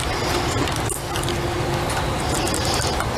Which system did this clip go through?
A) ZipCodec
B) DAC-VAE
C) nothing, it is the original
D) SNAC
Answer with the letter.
C